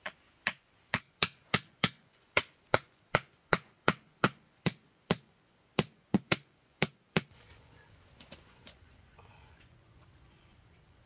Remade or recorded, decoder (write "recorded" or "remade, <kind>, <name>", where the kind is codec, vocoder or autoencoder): remade, vocoder, Vocos